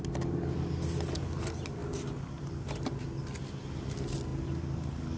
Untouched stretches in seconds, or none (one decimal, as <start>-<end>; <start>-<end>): 0.0-5.2